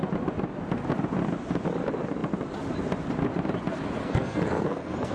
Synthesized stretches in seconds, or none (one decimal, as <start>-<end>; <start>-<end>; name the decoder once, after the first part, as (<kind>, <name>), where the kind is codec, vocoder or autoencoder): 4.0-5.1 (codec, SNAC)